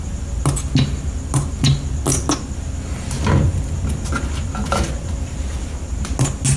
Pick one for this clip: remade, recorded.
recorded